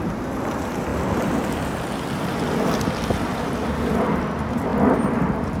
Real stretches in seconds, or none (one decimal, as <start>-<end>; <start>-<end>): 0.0-5.6